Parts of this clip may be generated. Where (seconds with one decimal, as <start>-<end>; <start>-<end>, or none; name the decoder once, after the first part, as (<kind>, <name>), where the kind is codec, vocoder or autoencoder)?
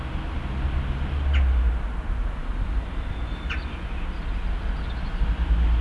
none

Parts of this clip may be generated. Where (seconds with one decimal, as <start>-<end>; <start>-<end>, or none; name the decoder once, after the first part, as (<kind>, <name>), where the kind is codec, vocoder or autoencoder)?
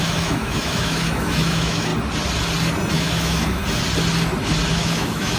0.0-1.9 (autoencoder, DAC-VAE); 2.9-3.6; 4.7-5.4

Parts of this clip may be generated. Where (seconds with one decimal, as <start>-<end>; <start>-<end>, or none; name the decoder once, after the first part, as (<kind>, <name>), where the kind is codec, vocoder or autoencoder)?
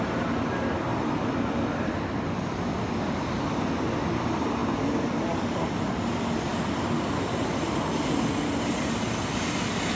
none